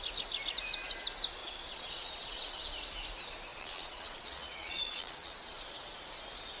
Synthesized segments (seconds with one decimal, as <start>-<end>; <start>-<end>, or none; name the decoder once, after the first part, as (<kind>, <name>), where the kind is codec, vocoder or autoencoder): 1.4-2.7 (vocoder, Vocos); 3.5-5.6